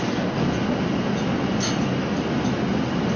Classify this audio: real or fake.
real